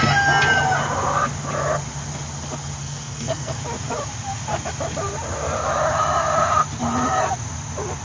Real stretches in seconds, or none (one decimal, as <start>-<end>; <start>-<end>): 0.0-2.8; 3.6-8.0